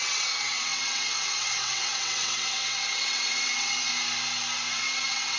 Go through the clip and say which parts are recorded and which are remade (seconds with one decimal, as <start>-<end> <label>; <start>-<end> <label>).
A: 0.0-3.9 remade; 3.9-4.7 recorded; 4.7-5.4 remade